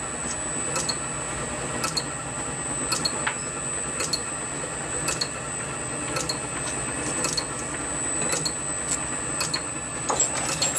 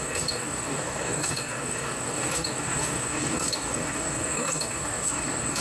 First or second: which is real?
first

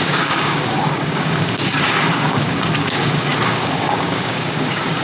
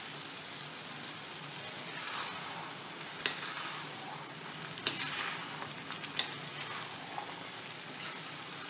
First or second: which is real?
second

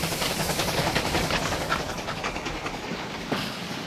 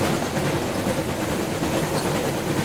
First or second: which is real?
second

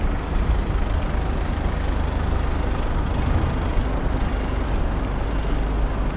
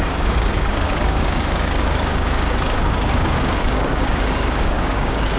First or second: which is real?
first